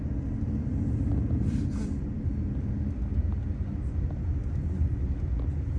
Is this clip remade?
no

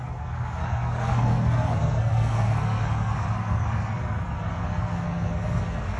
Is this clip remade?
yes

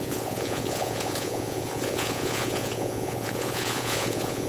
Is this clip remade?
yes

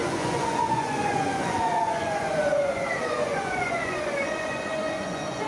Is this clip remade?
yes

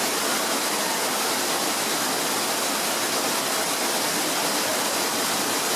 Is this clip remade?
no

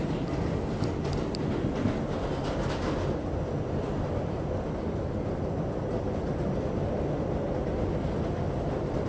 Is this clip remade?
no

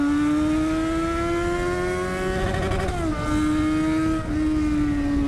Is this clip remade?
no